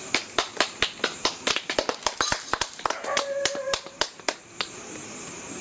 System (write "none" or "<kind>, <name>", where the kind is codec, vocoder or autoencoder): vocoder, BigVGAN v2